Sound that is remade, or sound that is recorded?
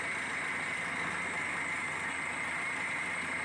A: recorded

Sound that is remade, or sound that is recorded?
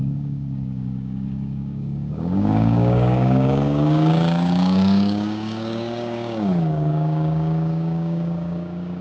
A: remade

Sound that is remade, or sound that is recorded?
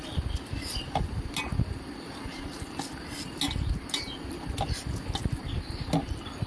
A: recorded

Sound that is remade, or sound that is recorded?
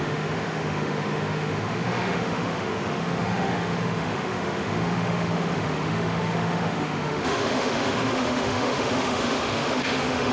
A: remade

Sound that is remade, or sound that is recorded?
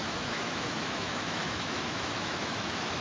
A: remade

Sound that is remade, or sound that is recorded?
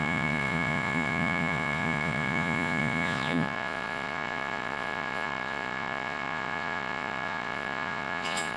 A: remade